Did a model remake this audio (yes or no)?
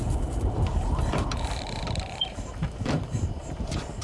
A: yes